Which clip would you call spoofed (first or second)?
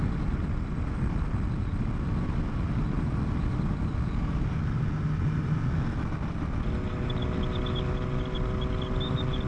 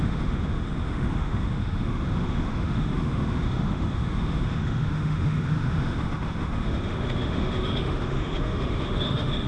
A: second